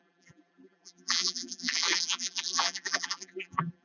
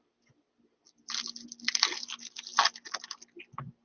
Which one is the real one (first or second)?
second